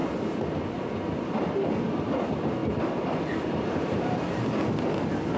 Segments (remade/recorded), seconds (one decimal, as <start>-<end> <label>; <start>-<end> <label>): 0.0-5.4 recorded